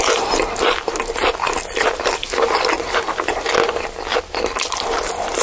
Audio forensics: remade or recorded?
recorded